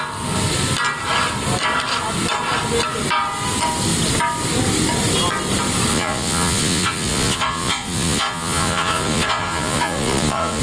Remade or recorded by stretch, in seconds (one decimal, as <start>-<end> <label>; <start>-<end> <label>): 0.0-5.9 recorded; 5.9-10.6 remade